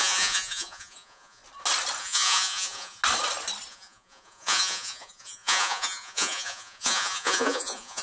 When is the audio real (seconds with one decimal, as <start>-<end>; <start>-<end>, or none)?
1.4-2.0; 3.0-3.7